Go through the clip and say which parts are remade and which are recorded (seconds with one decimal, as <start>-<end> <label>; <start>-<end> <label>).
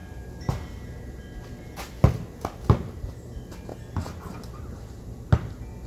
0.0-1.2 remade; 1.2-5.9 recorded